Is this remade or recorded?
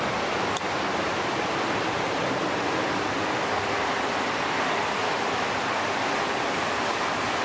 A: remade